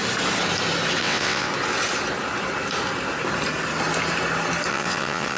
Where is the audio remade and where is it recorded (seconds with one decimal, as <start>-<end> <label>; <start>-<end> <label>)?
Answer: 0.0-1.0 recorded; 1.0-1.5 remade; 1.5-4.7 recorded; 4.7-5.4 remade